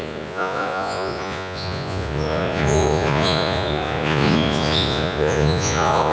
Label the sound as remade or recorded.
remade